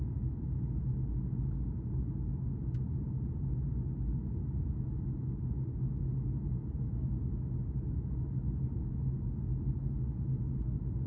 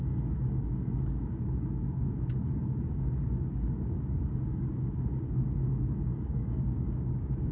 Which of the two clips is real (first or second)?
first